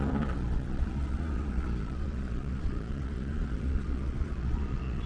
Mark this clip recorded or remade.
remade